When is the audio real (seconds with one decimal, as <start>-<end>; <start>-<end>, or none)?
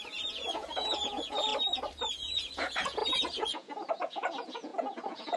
1.5-2.1